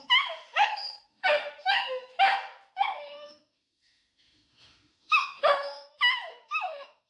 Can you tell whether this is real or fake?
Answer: fake